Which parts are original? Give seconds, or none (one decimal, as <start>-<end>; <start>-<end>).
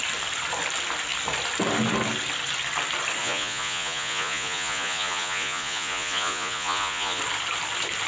0.0-3.2; 7.2-8.1